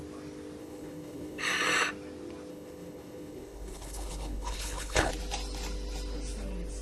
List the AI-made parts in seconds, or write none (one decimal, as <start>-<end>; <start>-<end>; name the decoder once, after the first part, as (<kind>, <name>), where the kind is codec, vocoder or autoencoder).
0.6-1.4 (codec, HILCodec); 2.5-5.1